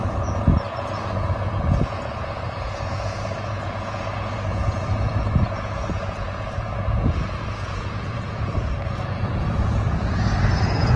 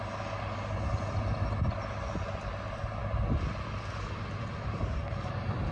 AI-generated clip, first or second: first